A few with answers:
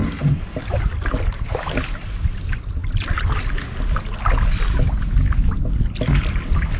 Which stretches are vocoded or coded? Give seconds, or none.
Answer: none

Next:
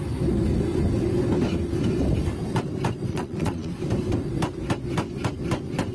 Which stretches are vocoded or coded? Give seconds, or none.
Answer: 3.1-3.7 (vocoder, Vocos)

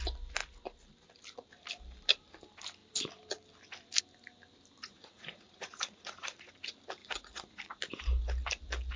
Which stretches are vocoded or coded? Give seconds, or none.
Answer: 4.8-6.5 (vocoder, Vocos); 7.0-7.8

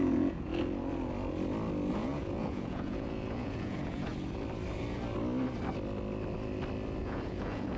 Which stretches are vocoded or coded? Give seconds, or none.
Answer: 0.0-0.5 (vocoder, Vocos); 1.9-4.1; 7.0-7.8

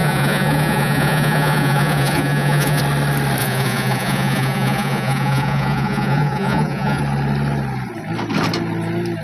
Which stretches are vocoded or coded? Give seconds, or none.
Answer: 0.0-2.8 (vocoder, Vocos); 3.4-7.0